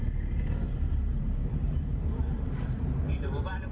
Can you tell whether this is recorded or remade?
remade